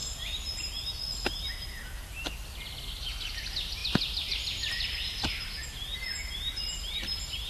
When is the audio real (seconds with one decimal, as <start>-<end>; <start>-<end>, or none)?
0.0-7.5